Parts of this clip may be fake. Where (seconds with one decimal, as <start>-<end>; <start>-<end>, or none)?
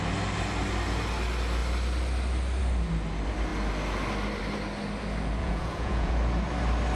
5.4-6.1